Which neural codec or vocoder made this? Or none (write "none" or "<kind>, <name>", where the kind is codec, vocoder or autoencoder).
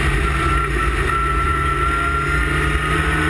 none